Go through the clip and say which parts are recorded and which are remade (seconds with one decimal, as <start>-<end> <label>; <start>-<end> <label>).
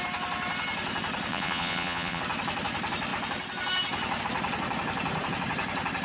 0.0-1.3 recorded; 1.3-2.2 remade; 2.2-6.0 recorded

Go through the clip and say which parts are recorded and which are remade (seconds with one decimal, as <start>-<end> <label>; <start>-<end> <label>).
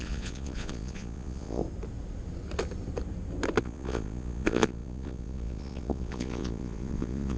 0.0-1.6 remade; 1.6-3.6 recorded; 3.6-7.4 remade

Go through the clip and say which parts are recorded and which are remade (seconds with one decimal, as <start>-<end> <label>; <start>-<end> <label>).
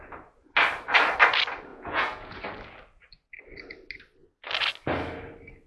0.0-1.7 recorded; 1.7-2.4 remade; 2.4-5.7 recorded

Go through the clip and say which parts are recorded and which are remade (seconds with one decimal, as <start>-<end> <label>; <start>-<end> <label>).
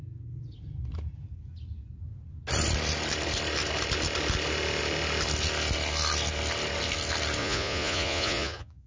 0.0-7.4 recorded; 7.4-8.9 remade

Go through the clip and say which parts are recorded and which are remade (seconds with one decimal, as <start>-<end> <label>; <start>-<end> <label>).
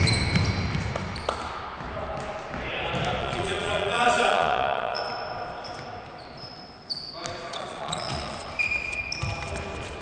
0.0-3.2 recorded; 3.2-5.0 remade; 5.0-7.5 recorded; 7.5-8.5 remade; 8.5-10.0 recorded